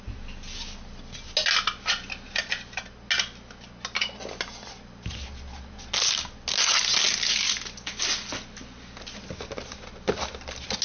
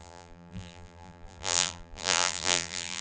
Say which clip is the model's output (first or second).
second